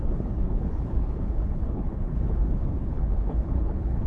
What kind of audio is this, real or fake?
fake